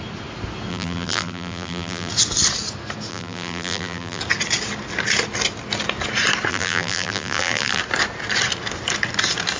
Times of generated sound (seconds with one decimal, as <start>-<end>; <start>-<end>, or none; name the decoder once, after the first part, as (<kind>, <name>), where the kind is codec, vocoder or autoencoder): 0.7-2.1 (vocoder, BigVGAN v2); 3.1-4.2; 6.5-7.8